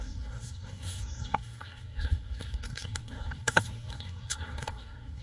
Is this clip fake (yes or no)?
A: yes